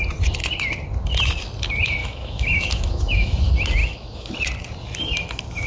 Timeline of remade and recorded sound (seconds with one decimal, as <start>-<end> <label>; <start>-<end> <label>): 0.0-2.0 recorded; 2.0-3.4 remade; 3.4-3.8 recorded; 3.8-4.3 remade; 4.3-5.7 recorded